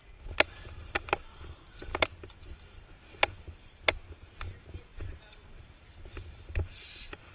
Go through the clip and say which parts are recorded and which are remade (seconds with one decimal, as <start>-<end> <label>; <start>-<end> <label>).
0.0-7.3 recorded